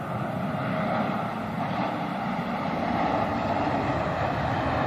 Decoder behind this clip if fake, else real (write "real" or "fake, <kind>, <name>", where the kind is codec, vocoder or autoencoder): fake, vocoder, BigVGAN v2